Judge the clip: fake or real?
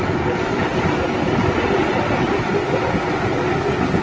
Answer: real